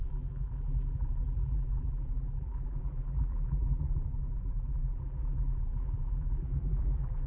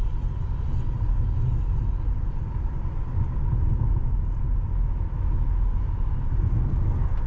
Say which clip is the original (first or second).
second